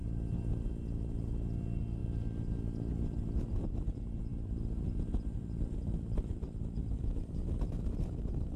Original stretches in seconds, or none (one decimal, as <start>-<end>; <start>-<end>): 0.0-4.3; 7.3-8.6